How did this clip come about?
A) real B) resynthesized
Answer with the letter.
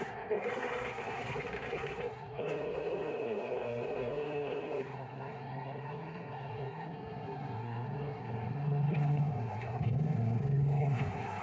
B